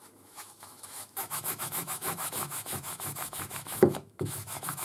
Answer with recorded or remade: remade